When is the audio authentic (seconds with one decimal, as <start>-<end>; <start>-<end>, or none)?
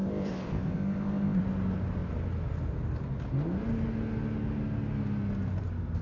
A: 1.4-6.0